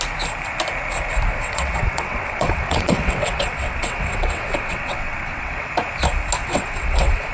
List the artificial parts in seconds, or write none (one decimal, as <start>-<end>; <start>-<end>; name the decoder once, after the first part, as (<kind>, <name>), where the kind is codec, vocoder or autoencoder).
1.3-5.7 (vocoder, WaveNeXt); 6.4-7.3